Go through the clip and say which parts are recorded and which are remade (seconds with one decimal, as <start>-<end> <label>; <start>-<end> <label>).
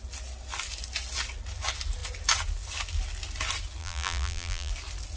0.0-3.8 recorded; 3.8-4.7 remade; 4.7-5.2 recorded